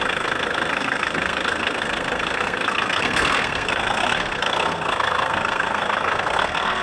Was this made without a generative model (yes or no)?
no